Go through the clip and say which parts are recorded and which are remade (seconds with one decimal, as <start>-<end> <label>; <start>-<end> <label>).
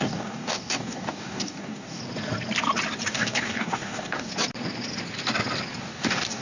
0.0-2.0 remade; 2.0-3.1 recorded; 3.1-4.3 remade; 4.3-5.8 recorded; 5.8-6.4 remade